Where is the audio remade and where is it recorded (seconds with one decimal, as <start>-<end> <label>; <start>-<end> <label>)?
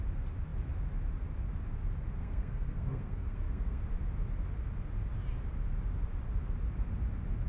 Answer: 0.0-2.2 recorded; 2.2-3.8 remade; 3.8-7.5 recorded